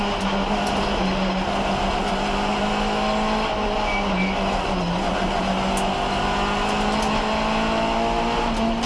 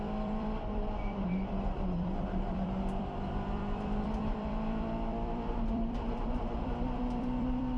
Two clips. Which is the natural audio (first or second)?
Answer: first